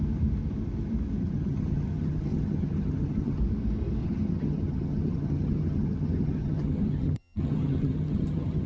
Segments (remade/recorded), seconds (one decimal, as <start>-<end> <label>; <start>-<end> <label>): 0.0-1.2 recorded; 1.2-3.4 remade; 3.4-4.0 recorded; 4.0-8.7 remade